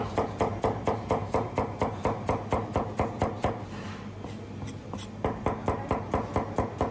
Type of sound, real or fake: real